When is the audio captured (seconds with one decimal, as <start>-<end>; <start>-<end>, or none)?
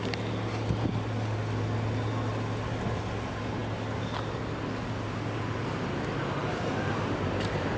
0.0-6.4